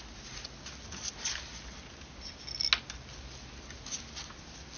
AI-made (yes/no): no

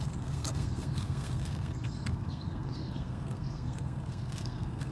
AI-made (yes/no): yes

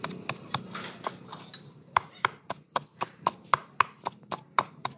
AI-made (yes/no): no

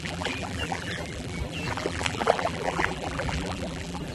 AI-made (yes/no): yes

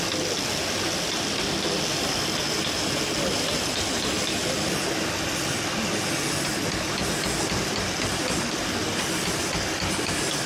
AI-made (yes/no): no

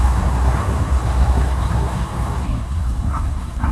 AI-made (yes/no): yes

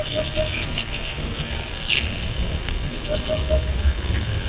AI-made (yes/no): yes